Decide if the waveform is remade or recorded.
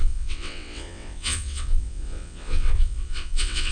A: remade